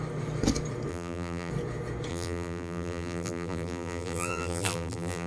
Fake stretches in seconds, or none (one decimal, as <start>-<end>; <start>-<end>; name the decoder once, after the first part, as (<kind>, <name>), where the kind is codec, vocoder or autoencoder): 0.9-1.5 (vocoder, BigVGAN v2); 2.1-5.3